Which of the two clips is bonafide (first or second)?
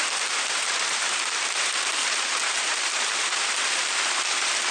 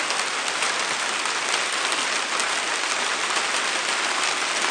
second